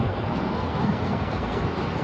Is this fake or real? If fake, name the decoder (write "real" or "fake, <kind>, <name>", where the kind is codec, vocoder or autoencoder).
fake, codec, SNAC